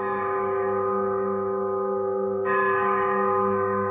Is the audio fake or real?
fake